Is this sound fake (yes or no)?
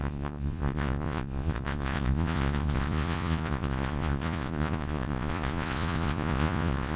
yes